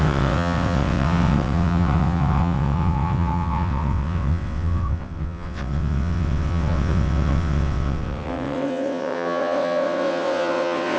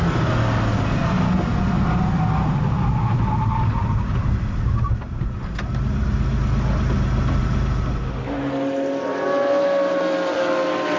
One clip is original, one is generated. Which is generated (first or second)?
first